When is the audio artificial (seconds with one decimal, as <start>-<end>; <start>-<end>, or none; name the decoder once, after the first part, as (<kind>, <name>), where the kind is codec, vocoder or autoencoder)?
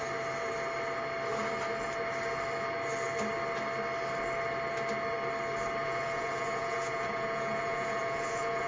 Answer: 5.8-8.7 (vocoder, Vocos)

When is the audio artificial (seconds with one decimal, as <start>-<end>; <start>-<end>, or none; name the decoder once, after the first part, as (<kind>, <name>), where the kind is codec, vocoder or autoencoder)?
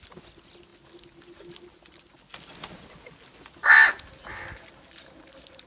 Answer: none